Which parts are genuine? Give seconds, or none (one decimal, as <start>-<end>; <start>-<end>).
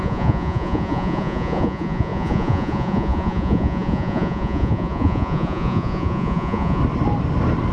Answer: 6.8-7.7